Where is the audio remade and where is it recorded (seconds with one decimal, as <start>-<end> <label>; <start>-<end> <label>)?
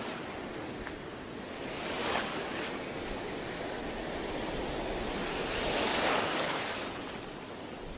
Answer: 0.0-2.0 recorded; 2.0-2.6 remade; 2.6-3.0 recorded; 3.0-3.8 remade; 3.8-5.9 recorded; 5.9-6.8 remade; 6.8-8.0 recorded